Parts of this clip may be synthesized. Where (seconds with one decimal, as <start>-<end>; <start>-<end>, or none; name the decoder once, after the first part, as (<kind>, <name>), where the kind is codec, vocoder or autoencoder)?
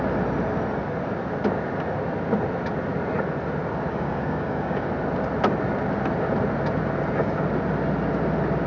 3.9-4.9 (codec, DAC)